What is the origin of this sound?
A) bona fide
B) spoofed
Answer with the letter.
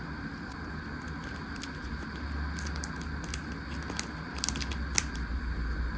A